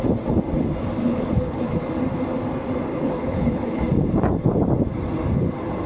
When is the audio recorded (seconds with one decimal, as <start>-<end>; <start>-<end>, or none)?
0.0-1.0; 1.8-2.9; 3.8-5.9